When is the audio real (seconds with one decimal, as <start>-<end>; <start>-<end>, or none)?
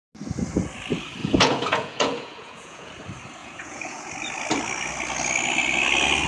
0.0-1.2; 2.9-3.4; 4.1-6.3